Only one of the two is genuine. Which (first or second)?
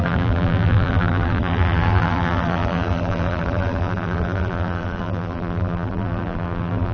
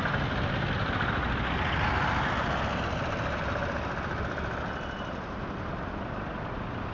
second